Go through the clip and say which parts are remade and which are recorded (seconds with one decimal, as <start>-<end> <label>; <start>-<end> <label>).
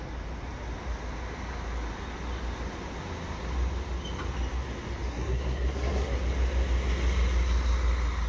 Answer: 0.0-5.1 recorded; 5.1-6.2 remade; 6.2-8.3 recorded